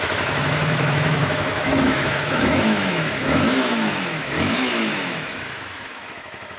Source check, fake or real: fake